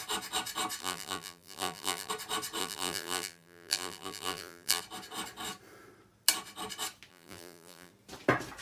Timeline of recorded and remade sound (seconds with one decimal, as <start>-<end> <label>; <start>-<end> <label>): 0.0-0.8 recorded; 0.8-2.1 remade; 2.1-2.6 recorded; 2.6-4.8 remade; 4.8-7.1 recorded; 7.1-7.9 remade; 7.9-8.6 recorded